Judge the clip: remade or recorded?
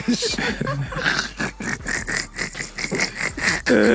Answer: recorded